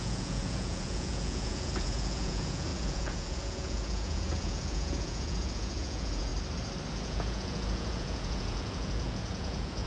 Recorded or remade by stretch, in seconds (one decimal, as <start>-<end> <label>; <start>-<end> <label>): 0.0-6.3 remade; 6.3-6.9 recorded; 6.9-9.9 remade

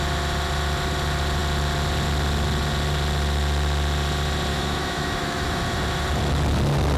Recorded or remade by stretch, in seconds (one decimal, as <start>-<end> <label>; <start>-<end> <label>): 0.0-4.5 recorded; 4.5-5.6 remade; 5.6-7.0 recorded

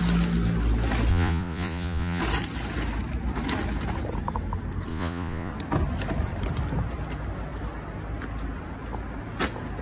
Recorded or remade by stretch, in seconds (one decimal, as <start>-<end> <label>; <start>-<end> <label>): 0.0-1.1 recorded; 1.1-2.2 remade; 2.2-4.9 recorded; 4.9-5.5 remade; 5.5-9.8 recorded

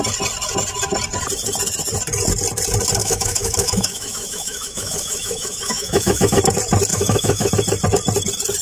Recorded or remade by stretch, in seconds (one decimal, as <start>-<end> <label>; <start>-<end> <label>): 0.0-3.0 recorded; 3.0-6.4 remade; 6.4-6.9 recorded; 6.9-7.5 remade; 7.5-8.6 recorded

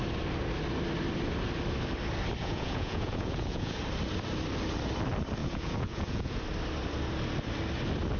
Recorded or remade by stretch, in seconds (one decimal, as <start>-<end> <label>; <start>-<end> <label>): 0.0-2.4 recorded; 2.4-3.8 remade; 3.8-5.4 recorded; 5.4-6.4 remade; 6.4-8.2 recorded